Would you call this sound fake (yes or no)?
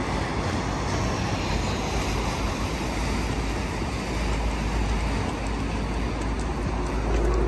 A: no